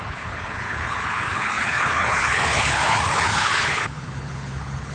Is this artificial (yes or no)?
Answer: yes